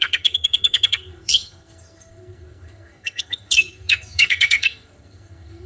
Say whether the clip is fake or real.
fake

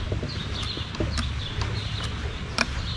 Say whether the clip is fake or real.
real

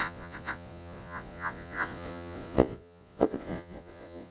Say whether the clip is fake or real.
fake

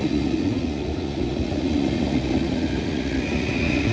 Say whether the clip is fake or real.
fake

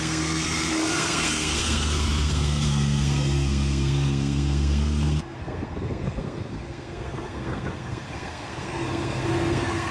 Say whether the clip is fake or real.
fake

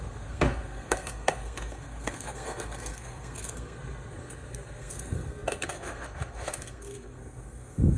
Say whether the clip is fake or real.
fake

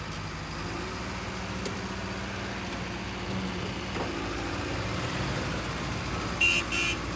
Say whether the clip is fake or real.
real